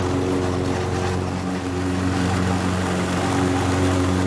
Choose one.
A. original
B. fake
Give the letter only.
A